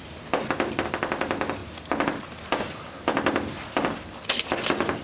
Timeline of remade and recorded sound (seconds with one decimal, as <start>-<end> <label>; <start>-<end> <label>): 0.0-5.0 recorded